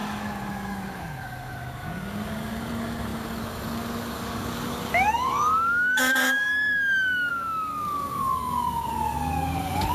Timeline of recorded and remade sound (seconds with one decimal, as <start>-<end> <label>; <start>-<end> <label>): 0.0-9.9 remade